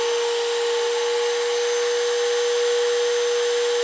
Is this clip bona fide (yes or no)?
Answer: yes